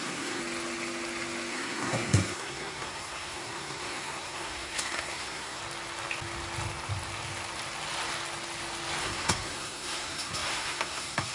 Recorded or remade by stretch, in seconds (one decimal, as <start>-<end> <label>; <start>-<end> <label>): 0.0-0.4 remade; 0.4-1.5 recorded; 1.5-5.6 remade; 5.6-9.0 recorded; 9.0-11.3 remade